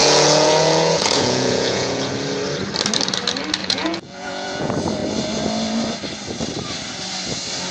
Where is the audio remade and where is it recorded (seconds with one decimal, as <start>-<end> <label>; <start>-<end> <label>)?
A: 0.0-2.1 remade; 2.1-3.6 recorded; 3.6-4.7 remade; 4.7-7.7 recorded